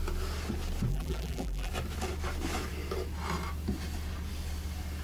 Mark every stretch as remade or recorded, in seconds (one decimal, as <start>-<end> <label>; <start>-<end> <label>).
0.0-0.9 recorded; 0.9-1.7 remade; 1.7-5.0 recorded